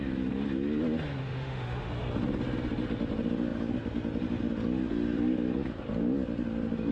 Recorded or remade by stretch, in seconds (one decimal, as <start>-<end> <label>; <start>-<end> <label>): 0.0-1.2 recorded; 1.2-1.9 remade; 1.9-6.9 recorded